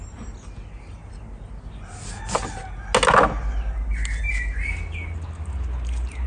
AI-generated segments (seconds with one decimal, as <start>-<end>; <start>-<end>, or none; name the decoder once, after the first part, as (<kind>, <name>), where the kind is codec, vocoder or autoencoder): none